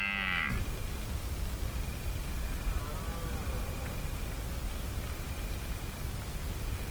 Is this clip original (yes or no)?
yes